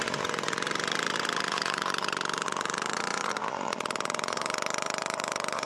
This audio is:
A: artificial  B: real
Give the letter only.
A